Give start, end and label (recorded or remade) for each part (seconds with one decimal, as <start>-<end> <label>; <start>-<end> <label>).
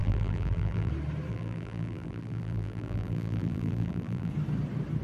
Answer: 0.0-0.9 remade; 0.9-1.3 recorded; 1.3-4.3 remade; 4.3-5.0 recorded